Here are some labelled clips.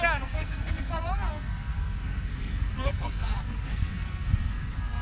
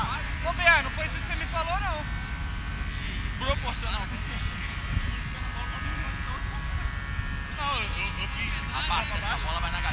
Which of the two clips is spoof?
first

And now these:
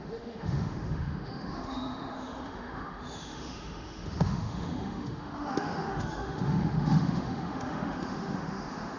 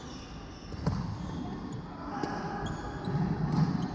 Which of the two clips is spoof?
first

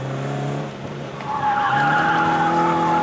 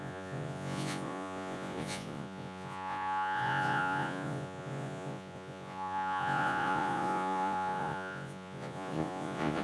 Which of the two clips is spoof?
second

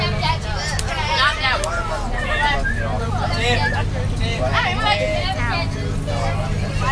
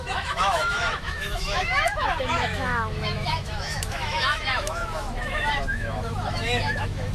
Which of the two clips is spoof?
second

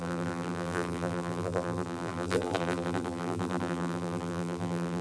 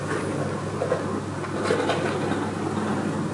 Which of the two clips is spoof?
first